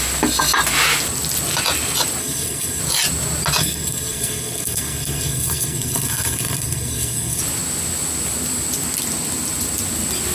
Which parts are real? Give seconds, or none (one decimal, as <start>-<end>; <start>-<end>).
0.0-2.2; 2.8-3.6; 7.4-10.3